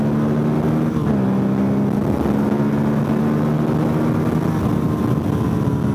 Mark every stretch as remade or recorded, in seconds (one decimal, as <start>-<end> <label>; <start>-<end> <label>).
0.0-5.9 recorded